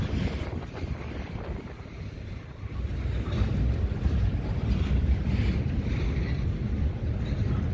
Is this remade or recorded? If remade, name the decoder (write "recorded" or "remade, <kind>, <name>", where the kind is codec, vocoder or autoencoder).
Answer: remade, vocoder, BigVGAN v2